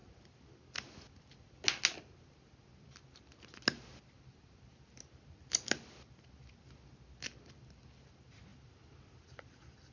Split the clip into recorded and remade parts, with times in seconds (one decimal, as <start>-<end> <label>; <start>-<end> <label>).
0.0-9.9 recorded